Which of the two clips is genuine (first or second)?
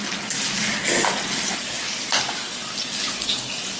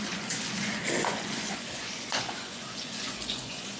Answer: first